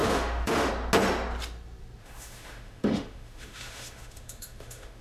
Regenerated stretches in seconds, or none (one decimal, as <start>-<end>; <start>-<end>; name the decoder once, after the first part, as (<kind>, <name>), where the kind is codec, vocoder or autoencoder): 0.0-0.7 (autoencoder, DAC-VAE); 2.0-5.0